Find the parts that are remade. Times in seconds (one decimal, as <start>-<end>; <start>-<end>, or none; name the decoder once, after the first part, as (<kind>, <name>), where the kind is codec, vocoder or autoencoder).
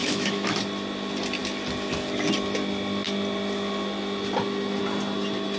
0.0-0.6 (autoencoder, DAC-VAE)